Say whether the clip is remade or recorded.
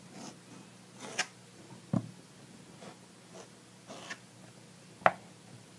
recorded